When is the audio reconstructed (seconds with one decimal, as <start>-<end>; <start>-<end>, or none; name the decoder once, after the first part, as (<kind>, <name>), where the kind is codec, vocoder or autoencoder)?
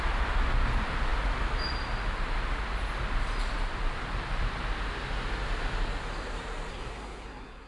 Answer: 6.7-7.7 (codec, SNAC)